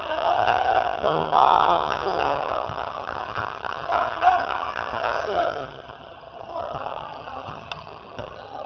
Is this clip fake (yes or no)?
yes